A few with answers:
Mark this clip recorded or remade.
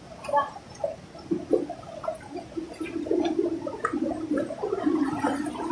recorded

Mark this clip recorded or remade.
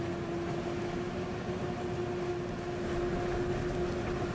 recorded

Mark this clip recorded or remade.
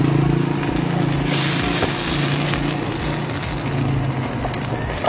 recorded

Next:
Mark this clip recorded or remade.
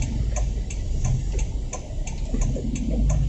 recorded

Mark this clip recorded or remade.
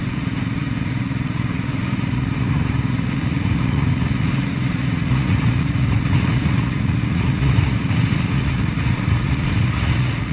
remade